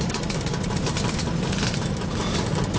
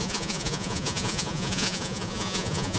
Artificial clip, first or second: second